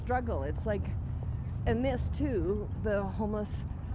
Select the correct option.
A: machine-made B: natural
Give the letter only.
B